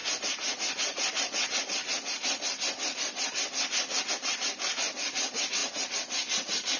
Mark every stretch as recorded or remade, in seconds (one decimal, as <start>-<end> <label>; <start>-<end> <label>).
0.0-6.8 recorded